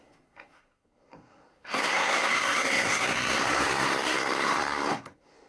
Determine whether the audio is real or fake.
fake